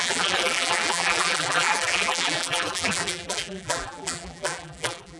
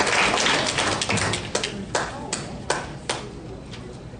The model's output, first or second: first